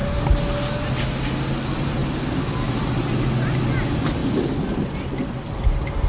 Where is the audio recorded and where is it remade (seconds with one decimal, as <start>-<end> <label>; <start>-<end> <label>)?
0.0-6.1 recorded